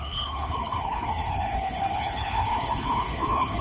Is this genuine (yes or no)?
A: no